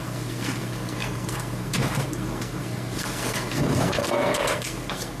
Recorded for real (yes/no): no